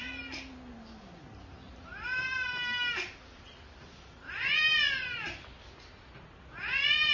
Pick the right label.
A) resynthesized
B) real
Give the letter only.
B